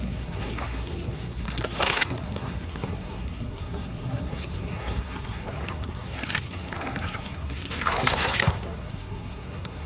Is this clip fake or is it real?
fake